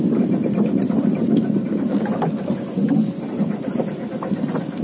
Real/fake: real